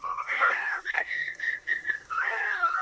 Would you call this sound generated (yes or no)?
yes